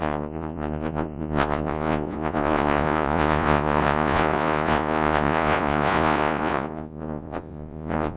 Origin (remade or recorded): remade